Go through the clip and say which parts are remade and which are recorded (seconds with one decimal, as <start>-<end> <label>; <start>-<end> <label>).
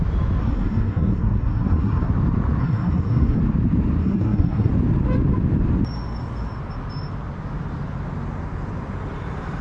0.0-0.4 recorded; 0.4-2.1 remade; 2.1-2.6 recorded; 2.6-3.4 remade; 3.4-4.0 recorded; 4.0-4.7 remade; 4.7-9.6 recorded